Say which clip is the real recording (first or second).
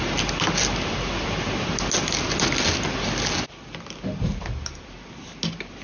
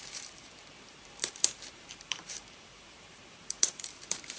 first